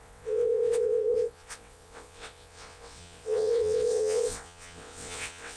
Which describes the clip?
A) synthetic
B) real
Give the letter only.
A